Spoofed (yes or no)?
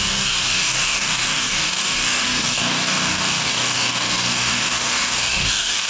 yes